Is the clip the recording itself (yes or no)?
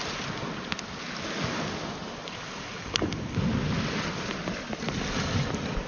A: yes